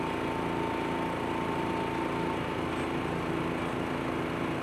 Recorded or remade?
recorded